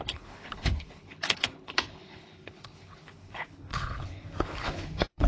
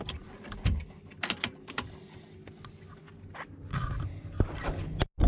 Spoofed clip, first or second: first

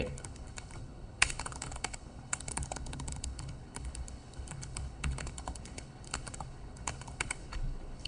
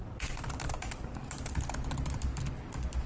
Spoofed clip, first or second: first